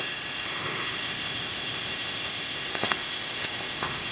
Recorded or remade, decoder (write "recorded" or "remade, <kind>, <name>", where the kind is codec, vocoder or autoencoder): remade, codec, ZipCodec